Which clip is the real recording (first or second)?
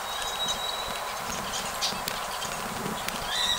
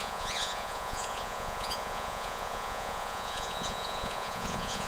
first